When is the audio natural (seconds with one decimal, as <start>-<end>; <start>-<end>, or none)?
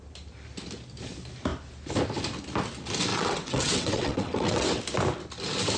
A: 0.0-3.1; 4.8-5.8